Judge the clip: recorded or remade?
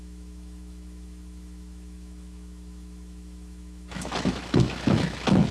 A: remade